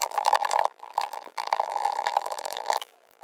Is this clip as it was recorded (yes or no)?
no